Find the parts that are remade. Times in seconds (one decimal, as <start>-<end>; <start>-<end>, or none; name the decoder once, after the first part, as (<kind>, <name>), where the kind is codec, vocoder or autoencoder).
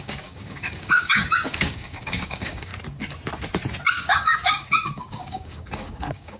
0.0-2.7 (codec, DAC); 3.9-6.4